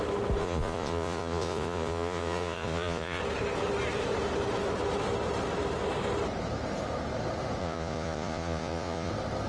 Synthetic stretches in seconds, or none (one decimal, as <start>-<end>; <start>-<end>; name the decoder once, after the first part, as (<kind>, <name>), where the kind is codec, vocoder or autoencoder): 0.4-3.2 (vocoder, Vocos); 7.6-9.1

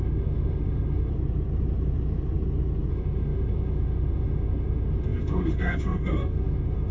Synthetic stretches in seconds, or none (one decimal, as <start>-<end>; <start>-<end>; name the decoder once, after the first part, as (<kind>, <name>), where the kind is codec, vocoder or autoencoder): 0.0-1.1 (autoencoder, DAC-VAE); 2.9-6.9

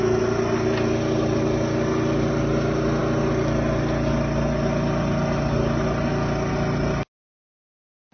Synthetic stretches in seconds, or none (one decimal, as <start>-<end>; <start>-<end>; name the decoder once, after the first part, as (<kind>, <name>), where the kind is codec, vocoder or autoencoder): none

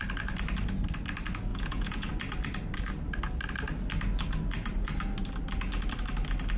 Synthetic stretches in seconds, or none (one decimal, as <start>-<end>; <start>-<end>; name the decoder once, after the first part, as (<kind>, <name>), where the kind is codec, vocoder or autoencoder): 1.5-2.1 (vocoder, Vocos)

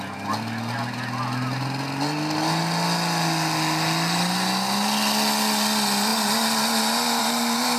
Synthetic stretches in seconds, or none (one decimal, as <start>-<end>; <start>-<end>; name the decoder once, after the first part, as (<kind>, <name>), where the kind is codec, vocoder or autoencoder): none

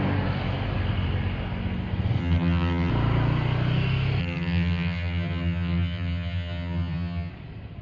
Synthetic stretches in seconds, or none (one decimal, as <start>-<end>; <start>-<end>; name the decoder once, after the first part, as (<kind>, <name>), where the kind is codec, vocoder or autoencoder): 2.2-2.9 (vocoder, HiFi-GAN); 4.2-7.3

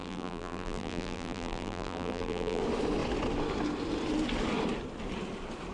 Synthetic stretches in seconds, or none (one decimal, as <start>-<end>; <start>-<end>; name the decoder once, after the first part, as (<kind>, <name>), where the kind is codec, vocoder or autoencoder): 0.0-2.6 (vocoder, BigVGAN v2)

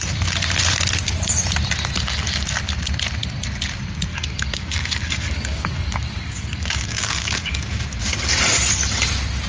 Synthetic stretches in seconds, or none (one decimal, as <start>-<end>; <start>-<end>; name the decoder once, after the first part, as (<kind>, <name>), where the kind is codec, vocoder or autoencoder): 4.1-7.7 (codec, DAC)